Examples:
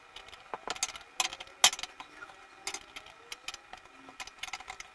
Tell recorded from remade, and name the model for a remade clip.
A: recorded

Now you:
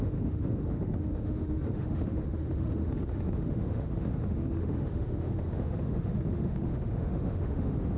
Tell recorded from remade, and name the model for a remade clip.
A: remade, autoencoder, DAC-VAE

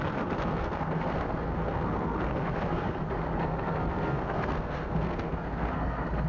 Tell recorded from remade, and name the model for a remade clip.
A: remade, codec, SNAC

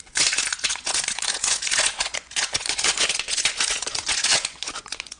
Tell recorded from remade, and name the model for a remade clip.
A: remade, vocoder, Vocos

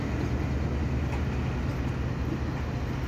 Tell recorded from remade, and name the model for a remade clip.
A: recorded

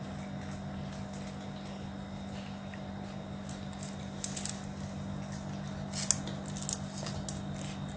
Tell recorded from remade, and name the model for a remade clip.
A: recorded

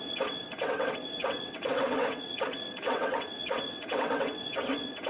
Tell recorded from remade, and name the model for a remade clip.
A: remade, vocoder, WaveNeXt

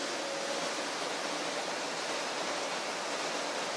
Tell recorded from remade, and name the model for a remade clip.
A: recorded